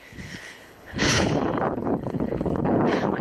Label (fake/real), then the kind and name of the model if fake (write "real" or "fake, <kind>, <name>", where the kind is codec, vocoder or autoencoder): fake, codec, HILCodec